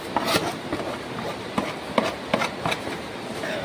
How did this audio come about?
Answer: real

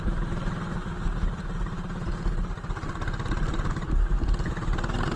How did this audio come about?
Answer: real